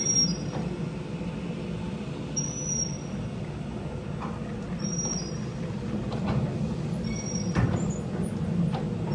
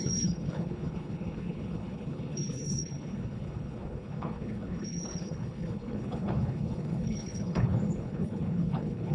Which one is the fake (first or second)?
second